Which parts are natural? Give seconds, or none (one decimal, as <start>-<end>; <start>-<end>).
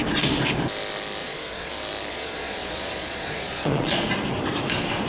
0.0-1.2; 1.7-2.1; 4.1-5.1